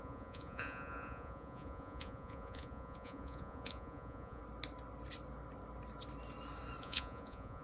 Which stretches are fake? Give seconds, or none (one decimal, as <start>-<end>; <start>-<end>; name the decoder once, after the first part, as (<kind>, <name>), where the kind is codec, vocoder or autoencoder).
0.0-4.4 (vocoder, Vocos); 6.8-7.6

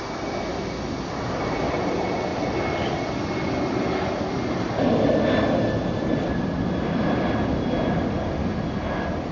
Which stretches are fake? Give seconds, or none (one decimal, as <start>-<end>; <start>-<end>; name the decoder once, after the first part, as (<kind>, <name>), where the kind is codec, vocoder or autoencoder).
none

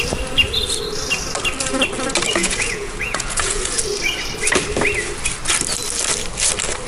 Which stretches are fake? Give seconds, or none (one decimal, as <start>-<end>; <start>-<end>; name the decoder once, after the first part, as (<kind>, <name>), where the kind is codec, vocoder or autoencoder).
2.4-3.8 (vocoder, Vocos)

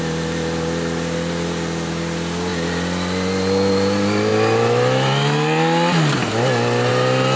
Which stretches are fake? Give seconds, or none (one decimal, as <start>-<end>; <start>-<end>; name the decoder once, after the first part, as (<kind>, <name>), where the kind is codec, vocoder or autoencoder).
none

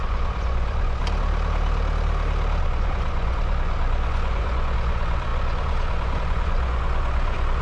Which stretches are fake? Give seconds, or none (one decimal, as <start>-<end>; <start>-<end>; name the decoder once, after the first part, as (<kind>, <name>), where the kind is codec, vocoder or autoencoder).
0.0-1.0 (vocoder, Vocos); 2.6-7.6

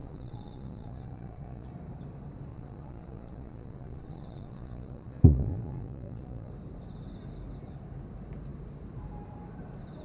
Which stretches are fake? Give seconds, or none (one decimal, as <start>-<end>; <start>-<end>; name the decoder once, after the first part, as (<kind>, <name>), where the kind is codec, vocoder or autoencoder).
0.0-1.7 (vocoder, Vocos); 2.5-6.5

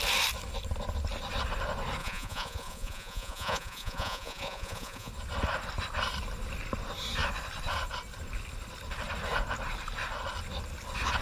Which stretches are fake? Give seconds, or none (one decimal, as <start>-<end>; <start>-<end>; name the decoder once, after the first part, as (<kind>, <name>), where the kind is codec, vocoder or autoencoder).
2.0-5.1 (vocoder, Vocos)